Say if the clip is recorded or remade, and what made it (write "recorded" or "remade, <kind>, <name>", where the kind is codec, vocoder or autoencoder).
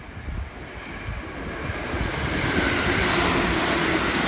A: recorded